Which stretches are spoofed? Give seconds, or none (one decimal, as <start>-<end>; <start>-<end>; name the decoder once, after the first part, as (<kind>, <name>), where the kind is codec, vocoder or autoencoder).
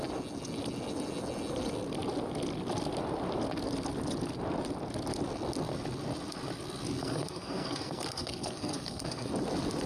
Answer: 7.0-9.3 (codec, SNAC)